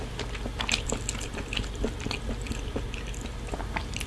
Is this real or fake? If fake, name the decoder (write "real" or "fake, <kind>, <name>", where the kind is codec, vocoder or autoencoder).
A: real